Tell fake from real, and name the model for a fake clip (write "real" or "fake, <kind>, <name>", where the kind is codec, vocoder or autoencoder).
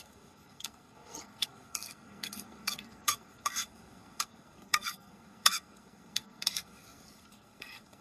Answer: fake, codec, SNAC